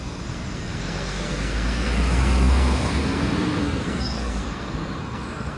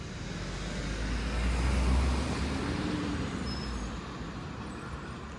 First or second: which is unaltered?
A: second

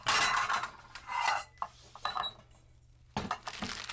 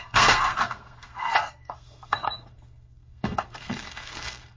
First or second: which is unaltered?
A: first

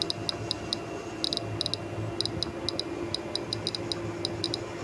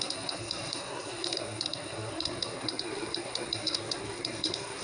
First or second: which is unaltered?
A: first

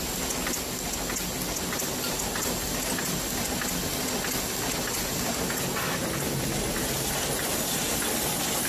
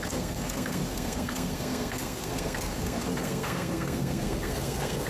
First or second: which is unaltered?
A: first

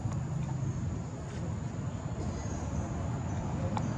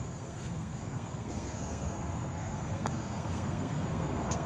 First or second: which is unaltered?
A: first